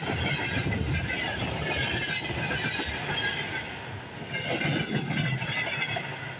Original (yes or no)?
yes